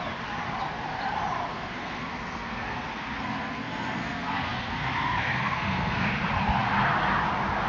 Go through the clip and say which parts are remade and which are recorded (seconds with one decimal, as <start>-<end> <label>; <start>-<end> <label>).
0.0-1.5 recorded; 1.5-6.1 remade; 6.1-7.7 recorded